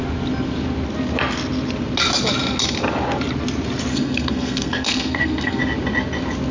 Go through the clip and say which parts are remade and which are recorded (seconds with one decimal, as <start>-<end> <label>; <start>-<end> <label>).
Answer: 0.0-3.9 recorded; 3.9-5.6 remade; 5.6-6.5 recorded